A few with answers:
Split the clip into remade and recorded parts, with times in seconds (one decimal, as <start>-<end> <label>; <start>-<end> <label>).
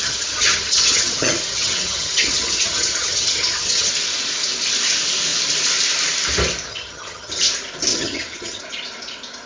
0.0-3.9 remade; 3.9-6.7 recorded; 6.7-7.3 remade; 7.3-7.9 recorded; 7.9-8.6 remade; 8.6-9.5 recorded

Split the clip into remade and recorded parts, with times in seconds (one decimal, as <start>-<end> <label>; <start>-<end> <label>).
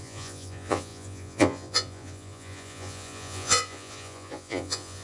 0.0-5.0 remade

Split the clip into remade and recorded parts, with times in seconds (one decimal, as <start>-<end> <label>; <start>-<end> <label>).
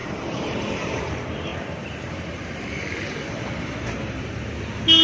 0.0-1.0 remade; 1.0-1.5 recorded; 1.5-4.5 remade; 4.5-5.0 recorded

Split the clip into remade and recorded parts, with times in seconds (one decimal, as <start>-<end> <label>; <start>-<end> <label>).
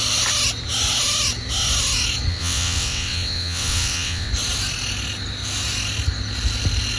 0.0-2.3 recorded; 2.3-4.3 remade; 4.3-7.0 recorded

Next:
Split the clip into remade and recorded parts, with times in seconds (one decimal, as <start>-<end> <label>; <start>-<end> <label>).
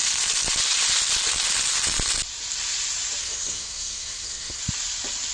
0.0-3.2 recorded; 3.2-4.6 remade; 4.6-5.3 recorded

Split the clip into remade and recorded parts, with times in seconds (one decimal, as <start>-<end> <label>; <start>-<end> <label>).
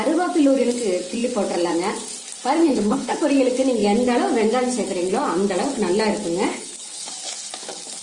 0.0-2.6 recorded; 2.6-3.2 remade; 3.2-6.5 recorded; 6.5-7.1 remade; 7.1-8.0 recorded